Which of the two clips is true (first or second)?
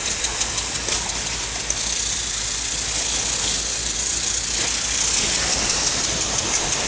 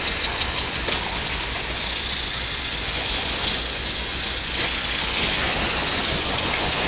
first